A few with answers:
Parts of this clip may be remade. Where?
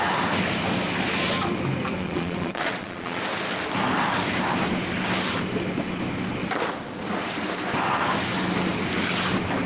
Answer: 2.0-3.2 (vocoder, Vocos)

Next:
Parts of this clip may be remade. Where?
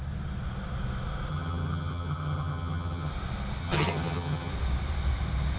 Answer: 1.3-3.1 (vocoder, HiFi-GAN); 3.6-4.5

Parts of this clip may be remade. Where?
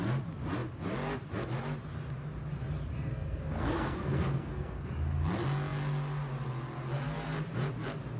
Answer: 3.1-4.9 (codec, SNAC)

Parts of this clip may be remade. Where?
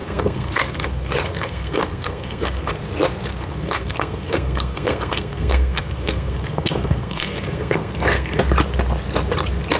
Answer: 0.0-2.7 (codec, SNAC); 3.3-8.4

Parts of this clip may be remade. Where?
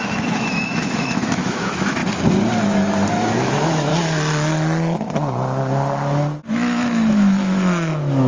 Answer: 0.0-2.0 (autoencoder, DAC-VAE); 3.1-3.9; 6.5-8.3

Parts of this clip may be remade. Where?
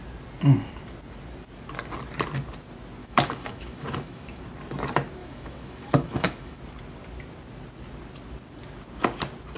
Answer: 3.0-4.4 (autoencoder, DAC-VAE); 5.2-6.6